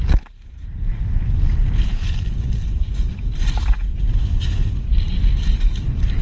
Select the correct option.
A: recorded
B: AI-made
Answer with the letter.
A